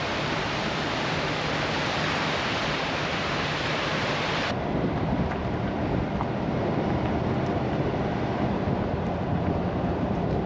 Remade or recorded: remade